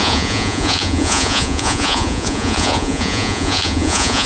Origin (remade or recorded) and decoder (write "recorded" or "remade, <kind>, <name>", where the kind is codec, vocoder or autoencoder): remade, vocoder, Vocos